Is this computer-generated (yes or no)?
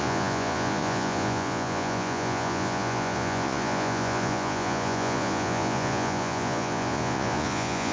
yes